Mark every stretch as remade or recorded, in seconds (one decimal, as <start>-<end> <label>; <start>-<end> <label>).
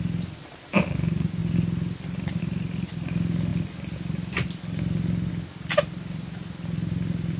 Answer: 0.0-7.4 recorded